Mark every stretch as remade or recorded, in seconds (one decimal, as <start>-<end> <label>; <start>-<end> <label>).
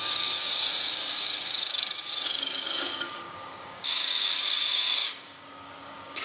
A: 0.0-6.2 remade